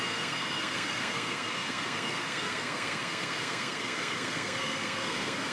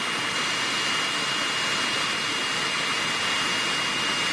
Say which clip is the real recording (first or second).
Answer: second